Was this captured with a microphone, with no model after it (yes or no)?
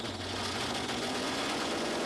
no